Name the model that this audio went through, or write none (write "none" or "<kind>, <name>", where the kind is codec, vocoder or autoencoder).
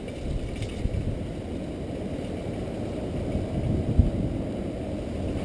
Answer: none